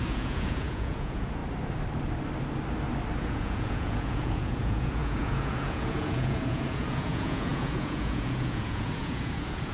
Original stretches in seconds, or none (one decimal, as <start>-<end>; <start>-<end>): 1.4-3.2